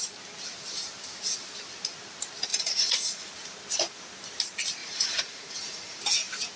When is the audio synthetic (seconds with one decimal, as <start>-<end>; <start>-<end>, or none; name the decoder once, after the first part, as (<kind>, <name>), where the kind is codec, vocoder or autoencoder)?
2.5-3.3 (vocoder, Vocos); 4.8-6.0